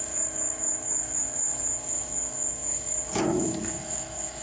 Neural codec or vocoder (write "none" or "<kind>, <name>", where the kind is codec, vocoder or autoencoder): autoencoder, DAC-VAE